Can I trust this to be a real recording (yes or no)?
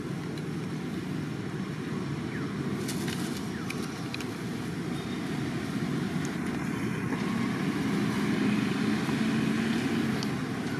yes